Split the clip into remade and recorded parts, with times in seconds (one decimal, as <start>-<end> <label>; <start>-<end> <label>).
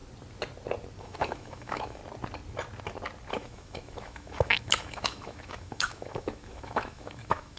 0.0-1.0 recorded; 1.0-2.0 remade; 2.0-3.3 recorded; 3.3-7.6 remade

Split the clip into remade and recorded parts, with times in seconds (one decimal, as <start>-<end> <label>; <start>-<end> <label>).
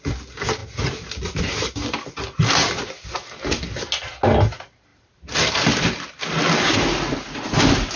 0.0-8.0 recorded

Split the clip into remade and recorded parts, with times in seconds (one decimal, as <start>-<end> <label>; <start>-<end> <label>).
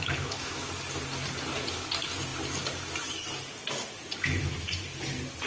0.0-0.7 remade; 0.7-5.5 recorded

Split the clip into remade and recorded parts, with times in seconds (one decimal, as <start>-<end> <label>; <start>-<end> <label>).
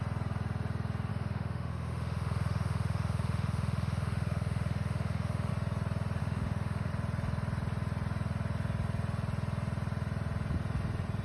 0.0-1.1 recorded; 1.1-5.5 remade; 5.5-6.2 recorded; 6.2-6.9 remade; 6.9-11.2 recorded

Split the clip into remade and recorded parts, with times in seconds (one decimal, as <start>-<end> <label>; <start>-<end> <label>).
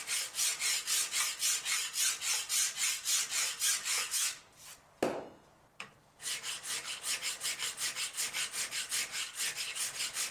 0.0-3.8 recorded; 3.8-4.4 remade; 4.4-10.3 recorded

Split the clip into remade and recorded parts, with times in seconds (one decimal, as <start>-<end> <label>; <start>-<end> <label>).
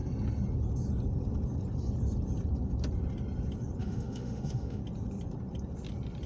0.0-3.8 recorded; 3.8-4.8 remade; 4.8-6.3 recorded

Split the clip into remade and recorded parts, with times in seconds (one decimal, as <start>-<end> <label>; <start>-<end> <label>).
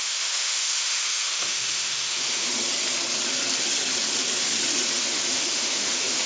0.0-2.5 remade; 2.5-5.0 recorded; 5.0-6.3 remade